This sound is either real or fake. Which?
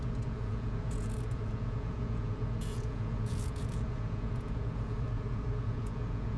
fake